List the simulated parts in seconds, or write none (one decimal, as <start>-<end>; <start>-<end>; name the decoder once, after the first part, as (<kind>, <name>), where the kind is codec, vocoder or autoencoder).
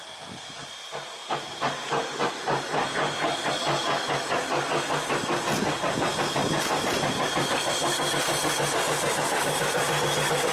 none